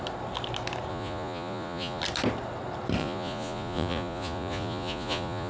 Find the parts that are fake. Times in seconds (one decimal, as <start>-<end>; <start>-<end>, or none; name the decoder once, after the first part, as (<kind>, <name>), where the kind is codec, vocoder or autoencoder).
0.9-2.0 (vocoder, Vocos); 3.0-5.5